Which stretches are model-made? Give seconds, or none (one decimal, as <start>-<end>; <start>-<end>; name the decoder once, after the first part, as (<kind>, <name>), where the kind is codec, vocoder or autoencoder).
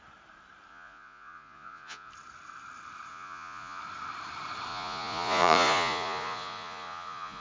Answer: 0.7-2.1 (vocoder, Vocos); 3.1-3.8; 4.7-7.4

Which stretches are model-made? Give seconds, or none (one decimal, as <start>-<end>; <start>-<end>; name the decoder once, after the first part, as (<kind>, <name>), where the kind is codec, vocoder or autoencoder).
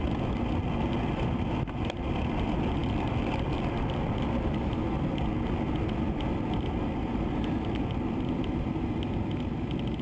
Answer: none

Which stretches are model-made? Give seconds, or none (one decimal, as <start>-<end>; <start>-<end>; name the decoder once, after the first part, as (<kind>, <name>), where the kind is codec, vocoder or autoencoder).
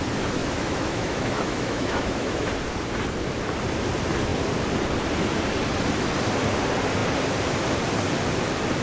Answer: 0.4-2.5 (autoencoder, DAC-VAE)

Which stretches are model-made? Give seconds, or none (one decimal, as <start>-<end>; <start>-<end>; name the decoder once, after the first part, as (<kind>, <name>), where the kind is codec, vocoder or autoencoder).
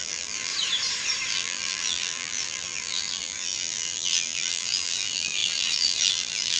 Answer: 0.0-0.5 (vocoder, BigVGAN v2); 1.3-6.6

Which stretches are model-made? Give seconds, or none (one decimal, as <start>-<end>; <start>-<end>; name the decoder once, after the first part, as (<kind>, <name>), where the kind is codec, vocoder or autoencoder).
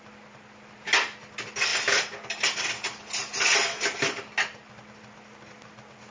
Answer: none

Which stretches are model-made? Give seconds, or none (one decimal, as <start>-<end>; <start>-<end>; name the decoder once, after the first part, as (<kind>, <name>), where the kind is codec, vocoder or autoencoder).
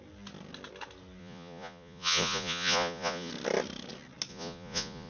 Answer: 1.2-3.3 (vocoder, Vocos); 4.3-5.1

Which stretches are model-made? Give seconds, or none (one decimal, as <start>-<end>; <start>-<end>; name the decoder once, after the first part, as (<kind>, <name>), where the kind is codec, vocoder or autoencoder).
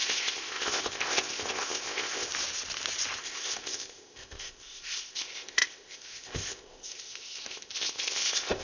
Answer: 0.0-2.3 (codec, ZipCodec); 3.2-8.6